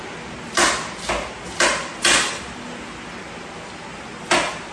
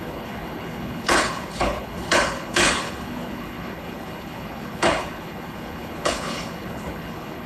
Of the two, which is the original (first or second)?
first